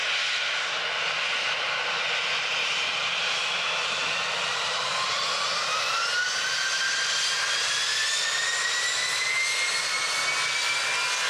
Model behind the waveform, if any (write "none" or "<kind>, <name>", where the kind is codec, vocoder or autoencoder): none